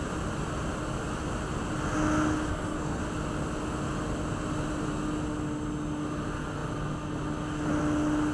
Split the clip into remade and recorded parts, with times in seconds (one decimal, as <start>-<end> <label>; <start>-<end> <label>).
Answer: 0.0-2.5 recorded; 2.5-3.0 remade; 3.0-8.3 recorded